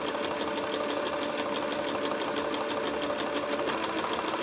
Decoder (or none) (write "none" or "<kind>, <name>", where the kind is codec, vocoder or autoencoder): none